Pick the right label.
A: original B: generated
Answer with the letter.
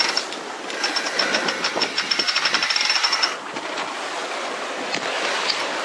A